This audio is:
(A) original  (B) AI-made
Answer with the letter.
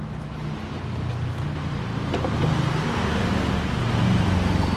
A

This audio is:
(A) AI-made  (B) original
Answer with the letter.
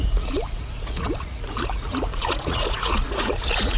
A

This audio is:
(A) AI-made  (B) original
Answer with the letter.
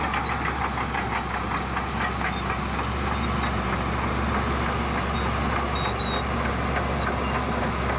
B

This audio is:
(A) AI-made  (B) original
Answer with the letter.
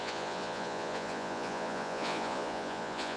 A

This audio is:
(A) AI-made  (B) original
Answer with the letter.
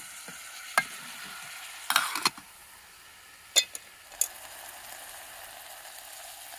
B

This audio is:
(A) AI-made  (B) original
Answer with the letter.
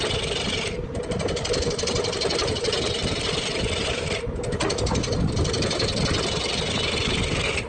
B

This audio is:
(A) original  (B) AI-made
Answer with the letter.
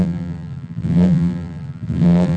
B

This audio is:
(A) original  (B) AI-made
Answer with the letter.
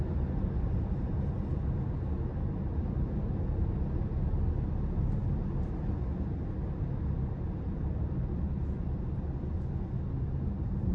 A